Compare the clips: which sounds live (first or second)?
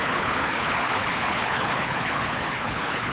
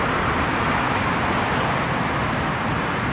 second